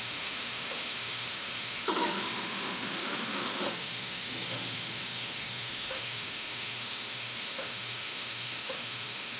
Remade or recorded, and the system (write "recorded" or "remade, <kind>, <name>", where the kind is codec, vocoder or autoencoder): remade, autoencoder, DAC-VAE